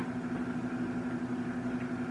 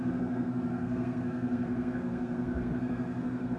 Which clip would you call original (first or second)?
first